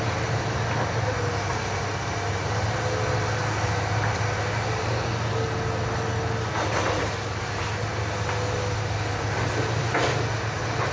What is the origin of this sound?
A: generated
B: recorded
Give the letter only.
B